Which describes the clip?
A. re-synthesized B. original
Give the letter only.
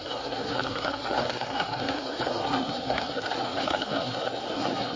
A